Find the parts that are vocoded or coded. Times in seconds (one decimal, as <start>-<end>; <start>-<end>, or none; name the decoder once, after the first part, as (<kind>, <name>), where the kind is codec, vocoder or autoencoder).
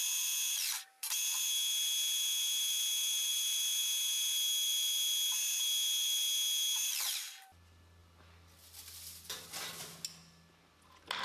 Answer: none